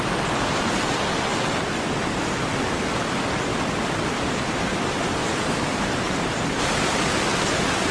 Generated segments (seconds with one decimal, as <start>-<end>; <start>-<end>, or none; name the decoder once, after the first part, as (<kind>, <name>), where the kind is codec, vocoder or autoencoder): 3.5-7.0 (vocoder, BigVGAN v2)